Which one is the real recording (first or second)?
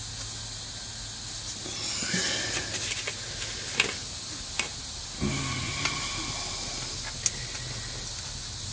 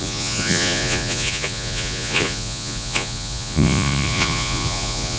first